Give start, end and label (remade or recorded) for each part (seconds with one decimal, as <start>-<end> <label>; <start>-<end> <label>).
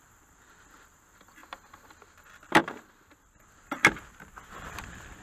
0.0-1.4 remade; 1.4-1.9 recorded; 1.9-5.2 remade